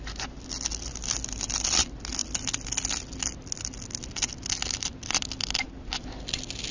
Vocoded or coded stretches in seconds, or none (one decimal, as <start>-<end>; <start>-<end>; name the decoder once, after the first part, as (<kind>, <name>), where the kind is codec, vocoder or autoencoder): none